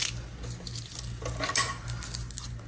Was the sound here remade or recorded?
recorded